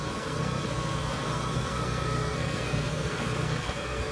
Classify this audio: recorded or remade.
remade